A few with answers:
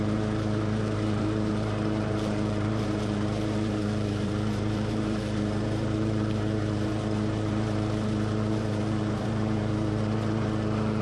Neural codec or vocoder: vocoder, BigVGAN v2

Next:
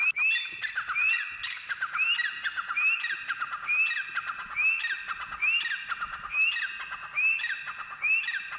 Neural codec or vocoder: none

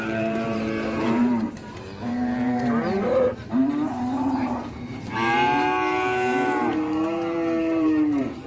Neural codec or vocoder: vocoder, BigVGAN v2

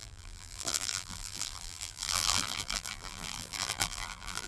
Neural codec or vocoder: vocoder, BigVGAN v2